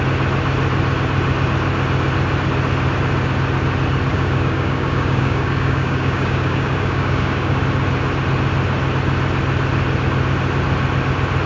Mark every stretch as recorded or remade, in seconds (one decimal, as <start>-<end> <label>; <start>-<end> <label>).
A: 0.0-4.1 recorded; 4.1-7.6 remade; 7.6-11.5 recorded